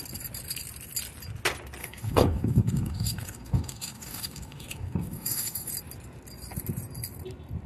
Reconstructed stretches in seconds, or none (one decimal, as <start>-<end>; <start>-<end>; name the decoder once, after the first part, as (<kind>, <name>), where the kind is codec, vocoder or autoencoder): 1.8-5.7 (codec, DAC)